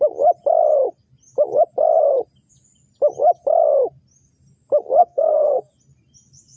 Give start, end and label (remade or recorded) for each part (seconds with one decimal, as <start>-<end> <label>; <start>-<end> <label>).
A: 0.0-5.0 recorded; 5.0-5.7 remade; 5.7-6.6 recorded